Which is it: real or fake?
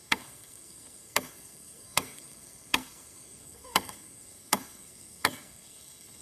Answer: fake